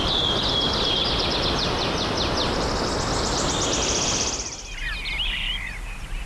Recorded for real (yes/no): yes